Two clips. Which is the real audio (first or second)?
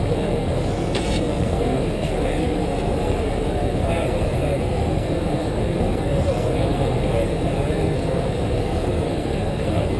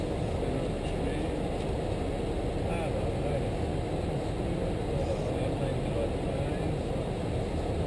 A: second